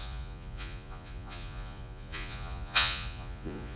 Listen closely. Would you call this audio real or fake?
fake